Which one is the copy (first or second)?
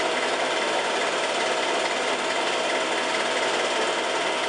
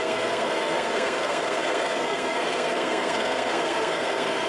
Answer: second